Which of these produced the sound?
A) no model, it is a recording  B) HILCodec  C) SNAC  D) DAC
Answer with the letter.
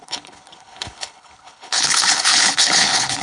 B